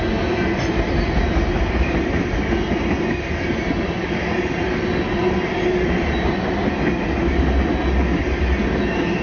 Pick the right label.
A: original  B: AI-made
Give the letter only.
A